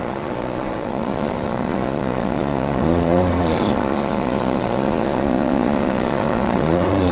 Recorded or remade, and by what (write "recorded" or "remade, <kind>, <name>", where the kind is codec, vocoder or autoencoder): remade, vocoder, Vocos